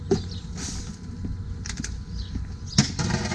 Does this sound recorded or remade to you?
recorded